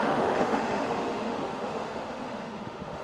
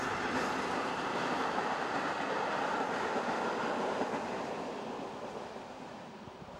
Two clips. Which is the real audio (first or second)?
second